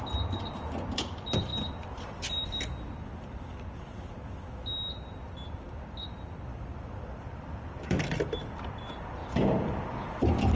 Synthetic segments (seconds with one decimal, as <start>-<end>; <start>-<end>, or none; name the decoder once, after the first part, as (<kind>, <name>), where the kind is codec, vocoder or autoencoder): 1.5-2.6 (vocoder, BigVGAN v2); 6.5-8.7; 9.2-10.1